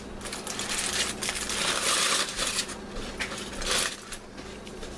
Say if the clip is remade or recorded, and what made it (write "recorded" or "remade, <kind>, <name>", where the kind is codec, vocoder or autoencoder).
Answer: recorded